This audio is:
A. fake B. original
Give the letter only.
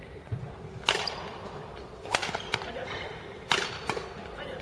B